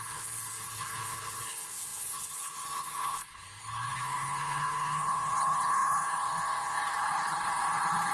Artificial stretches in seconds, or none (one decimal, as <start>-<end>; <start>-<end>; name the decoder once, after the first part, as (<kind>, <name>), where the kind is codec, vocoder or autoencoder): 0.0-8.1 (codec, HILCodec)